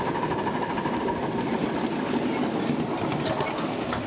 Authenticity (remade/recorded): recorded